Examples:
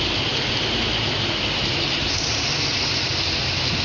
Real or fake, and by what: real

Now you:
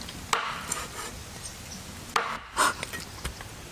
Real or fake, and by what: real